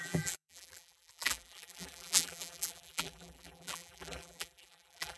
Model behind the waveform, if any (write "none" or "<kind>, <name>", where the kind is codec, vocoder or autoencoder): vocoder, BigVGAN v2